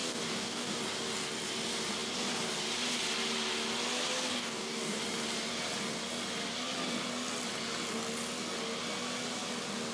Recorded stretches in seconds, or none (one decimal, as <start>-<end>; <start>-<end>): 0.8-4.3; 5.0-9.9